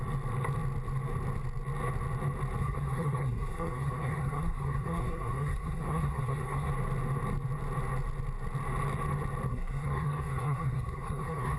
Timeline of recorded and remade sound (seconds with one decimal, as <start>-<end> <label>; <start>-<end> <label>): 0.0-2.6 recorded; 2.6-6.7 remade; 6.7-9.5 recorded; 9.5-11.6 remade